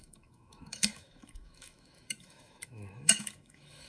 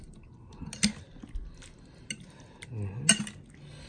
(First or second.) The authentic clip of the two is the second